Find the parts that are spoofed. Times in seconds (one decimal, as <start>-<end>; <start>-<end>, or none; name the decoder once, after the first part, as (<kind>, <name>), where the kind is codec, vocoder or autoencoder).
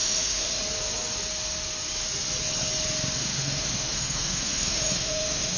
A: 0.0-0.6 (autoencoder, DAC-VAE); 3.2-5.6